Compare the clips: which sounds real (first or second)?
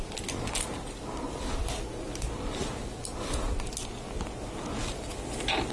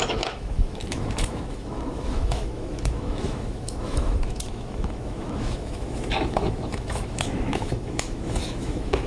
first